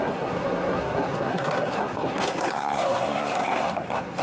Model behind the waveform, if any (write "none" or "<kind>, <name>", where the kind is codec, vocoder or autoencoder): codec, SNAC